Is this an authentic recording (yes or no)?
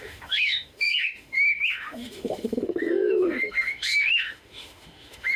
no